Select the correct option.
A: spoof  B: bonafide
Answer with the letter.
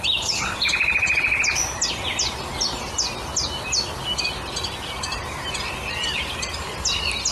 B